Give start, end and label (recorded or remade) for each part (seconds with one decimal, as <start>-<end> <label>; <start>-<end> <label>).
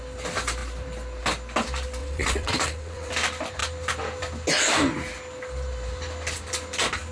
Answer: 0.0-2.0 recorded; 2.0-3.1 remade; 3.1-7.1 recorded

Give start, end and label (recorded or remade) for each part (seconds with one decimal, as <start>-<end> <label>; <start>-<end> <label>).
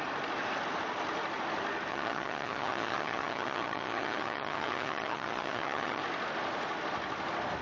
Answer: 0.0-1.9 recorded; 1.9-6.0 remade; 6.0-7.6 recorded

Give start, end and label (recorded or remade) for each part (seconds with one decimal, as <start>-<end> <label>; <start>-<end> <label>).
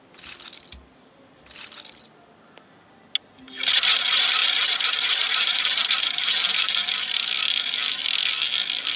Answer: 0.0-9.0 recorded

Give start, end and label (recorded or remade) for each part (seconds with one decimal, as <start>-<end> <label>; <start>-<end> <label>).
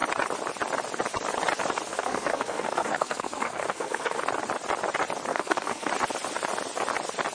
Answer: 0.0-1.9 recorded; 1.9-4.2 remade; 4.2-5.3 recorded; 5.3-5.9 remade; 5.9-7.3 recorded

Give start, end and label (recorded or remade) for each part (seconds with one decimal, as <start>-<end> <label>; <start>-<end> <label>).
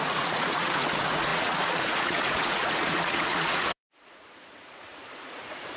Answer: 0.0-5.8 remade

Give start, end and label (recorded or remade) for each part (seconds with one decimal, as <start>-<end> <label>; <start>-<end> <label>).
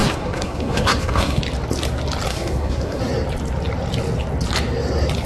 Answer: 0.0-1.4 remade; 1.4-2.3 recorded; 2.3-3.0 remade; 3.0-5.3 recorded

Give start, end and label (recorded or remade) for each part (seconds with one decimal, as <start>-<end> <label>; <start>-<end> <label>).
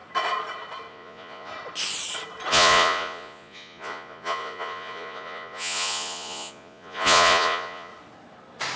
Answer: 0.0-0.9 recorded; 0.9-1.5 remade; 1.5-2.5 recorded; 2.5-7.9 remade; 7.9-8.8 recorded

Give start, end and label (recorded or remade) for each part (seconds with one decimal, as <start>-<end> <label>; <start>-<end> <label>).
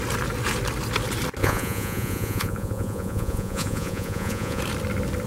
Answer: 0.0-1.4 recorded; 1.4-4.6 remade; 4.6-5.3 recorded